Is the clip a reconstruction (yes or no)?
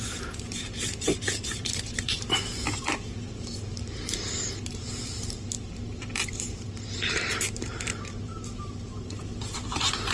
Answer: yes